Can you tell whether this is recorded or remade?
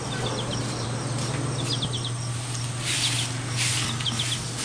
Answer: recorded